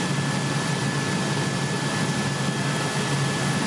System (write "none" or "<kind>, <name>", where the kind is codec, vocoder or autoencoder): none